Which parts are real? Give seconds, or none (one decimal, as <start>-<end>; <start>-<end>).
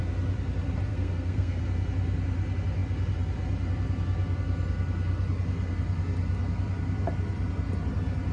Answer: 0.0-0.9; 1.6-8.3